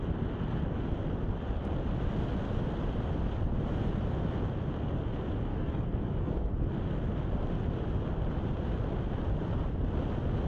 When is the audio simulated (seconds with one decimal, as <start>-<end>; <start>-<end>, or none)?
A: 5.5-6.5